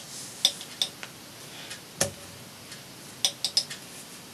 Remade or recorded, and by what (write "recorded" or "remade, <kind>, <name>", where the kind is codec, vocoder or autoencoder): recorded